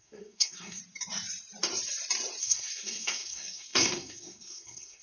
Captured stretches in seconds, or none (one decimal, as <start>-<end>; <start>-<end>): 0.8-2.4